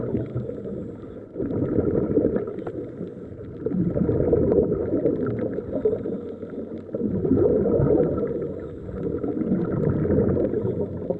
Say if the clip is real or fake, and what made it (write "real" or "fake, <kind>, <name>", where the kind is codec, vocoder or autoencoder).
real